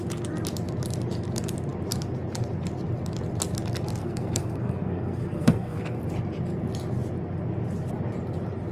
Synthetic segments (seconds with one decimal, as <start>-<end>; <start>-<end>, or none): 4.0-6.0